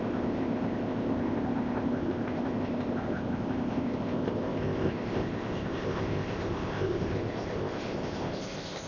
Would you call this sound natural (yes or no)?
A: no